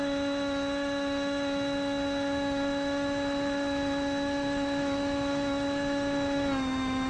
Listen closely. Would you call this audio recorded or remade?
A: remade